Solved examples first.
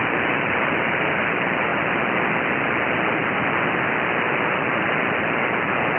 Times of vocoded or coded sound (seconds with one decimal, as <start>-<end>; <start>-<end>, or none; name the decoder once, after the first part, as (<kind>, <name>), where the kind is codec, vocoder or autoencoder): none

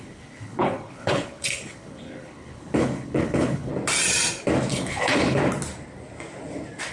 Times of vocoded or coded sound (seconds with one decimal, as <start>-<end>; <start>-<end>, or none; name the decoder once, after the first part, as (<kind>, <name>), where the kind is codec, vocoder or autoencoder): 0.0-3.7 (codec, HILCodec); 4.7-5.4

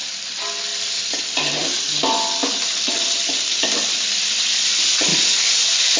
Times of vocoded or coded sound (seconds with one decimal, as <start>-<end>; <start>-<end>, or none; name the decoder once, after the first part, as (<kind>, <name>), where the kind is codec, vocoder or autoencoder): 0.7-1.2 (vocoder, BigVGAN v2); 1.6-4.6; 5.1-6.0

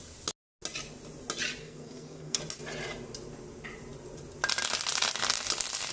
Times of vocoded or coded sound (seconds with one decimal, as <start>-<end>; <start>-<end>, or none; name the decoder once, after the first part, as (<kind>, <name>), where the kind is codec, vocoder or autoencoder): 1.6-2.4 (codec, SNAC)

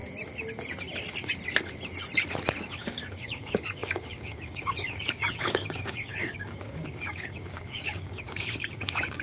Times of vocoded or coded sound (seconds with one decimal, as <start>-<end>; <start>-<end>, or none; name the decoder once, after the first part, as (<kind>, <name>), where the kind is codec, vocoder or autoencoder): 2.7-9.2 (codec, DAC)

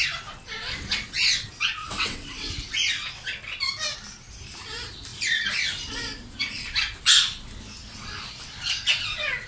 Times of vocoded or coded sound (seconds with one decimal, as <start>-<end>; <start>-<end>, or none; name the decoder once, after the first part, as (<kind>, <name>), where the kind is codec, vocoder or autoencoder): 1.8-2.5 (vocoder, WaveNeXt)

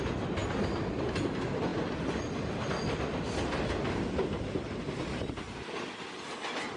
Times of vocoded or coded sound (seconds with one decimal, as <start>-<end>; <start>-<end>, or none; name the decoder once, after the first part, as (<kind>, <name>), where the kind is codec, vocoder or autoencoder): none